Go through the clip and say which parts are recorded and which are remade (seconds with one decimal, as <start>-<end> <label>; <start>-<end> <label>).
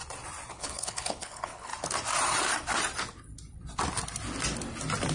0.0-0.5 recorded; 0.5-1.7 remade; 1.7-5.1 recorded